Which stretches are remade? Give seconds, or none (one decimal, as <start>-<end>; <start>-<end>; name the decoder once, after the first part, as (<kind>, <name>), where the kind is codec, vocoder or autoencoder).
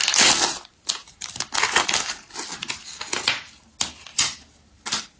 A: none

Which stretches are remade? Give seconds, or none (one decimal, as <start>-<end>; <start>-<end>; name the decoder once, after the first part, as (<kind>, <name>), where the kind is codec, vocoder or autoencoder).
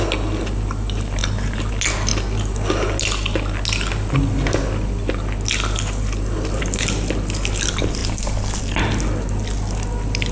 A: none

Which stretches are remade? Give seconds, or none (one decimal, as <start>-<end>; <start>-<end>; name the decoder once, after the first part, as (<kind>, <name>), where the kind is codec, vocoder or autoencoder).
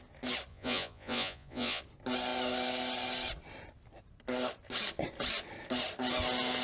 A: 0.5-1.8 (vocoder, Vocos)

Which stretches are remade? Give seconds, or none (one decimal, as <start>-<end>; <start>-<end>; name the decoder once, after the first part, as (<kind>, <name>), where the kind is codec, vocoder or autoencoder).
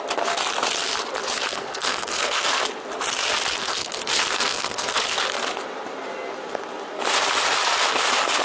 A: 1.5-2.6 (codec, SNAC); 3.5-5.2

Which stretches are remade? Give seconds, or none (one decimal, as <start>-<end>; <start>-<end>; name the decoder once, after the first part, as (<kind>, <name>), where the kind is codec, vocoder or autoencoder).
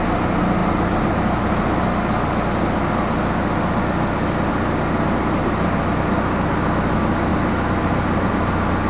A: none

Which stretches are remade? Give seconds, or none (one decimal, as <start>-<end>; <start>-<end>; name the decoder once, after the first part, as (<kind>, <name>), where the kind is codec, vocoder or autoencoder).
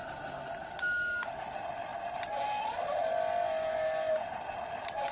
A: none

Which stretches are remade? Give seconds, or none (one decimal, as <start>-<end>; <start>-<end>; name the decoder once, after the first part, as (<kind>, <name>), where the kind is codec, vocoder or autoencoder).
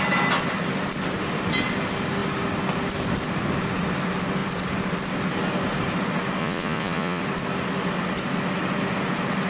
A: 6.4-7.2 (vocoder, Vocos)